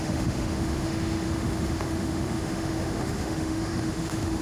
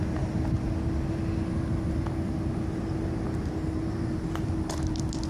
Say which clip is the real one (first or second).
second